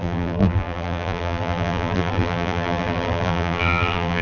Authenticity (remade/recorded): remade